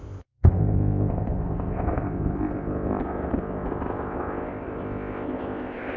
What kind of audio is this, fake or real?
fake